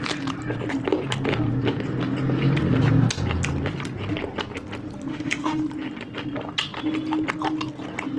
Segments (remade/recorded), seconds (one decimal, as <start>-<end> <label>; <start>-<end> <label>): 0.0-5.1 recorded; 5.1-5.6 remade; 5.6-8.2 recorded